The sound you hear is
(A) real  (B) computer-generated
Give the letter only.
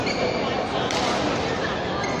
A